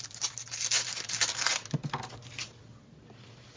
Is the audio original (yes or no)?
yes